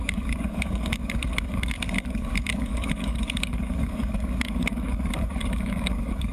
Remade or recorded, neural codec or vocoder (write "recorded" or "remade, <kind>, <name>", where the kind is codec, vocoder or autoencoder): remade, codec, DAC